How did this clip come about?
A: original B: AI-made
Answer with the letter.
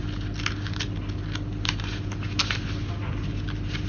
A